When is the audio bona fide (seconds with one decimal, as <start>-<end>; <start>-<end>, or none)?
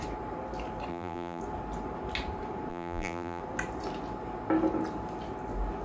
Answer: 0.0-0.9; 1.4-2.7; 3.4-5.8